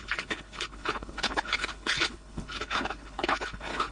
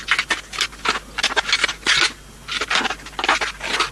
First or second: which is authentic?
second